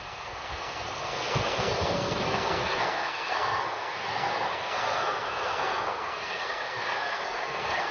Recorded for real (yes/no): no